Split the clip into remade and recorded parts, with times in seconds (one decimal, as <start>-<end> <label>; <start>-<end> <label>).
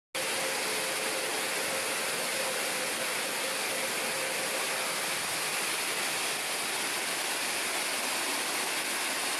0.0-9.4 recorded